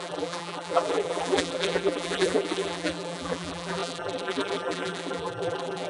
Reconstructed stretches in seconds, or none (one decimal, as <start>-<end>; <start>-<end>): 0.0-5.9